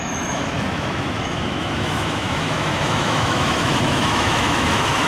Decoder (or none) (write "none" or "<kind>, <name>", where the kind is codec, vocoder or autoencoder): autoencoder, DAC-VAE